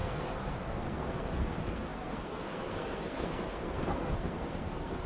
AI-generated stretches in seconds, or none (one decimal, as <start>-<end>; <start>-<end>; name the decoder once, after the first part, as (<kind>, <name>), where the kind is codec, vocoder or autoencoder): 0.0-5.1 (codec, SNAC)